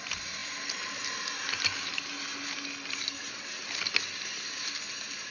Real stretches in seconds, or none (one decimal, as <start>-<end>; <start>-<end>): 0.0-5.3